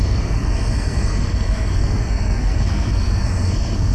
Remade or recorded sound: remade